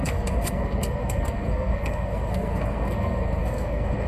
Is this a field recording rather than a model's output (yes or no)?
no